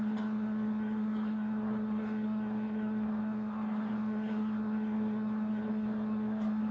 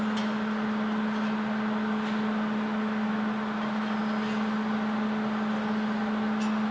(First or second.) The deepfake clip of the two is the first